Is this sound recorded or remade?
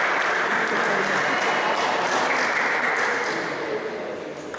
recorded